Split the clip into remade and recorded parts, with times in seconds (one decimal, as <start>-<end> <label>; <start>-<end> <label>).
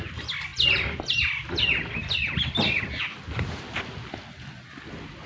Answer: 0.0-0.5 recorded; 0.5-2.8 remade; 2.8-5.3 recorded